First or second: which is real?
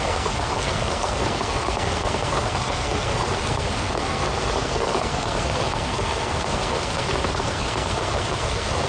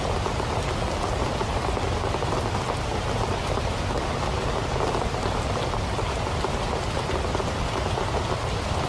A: second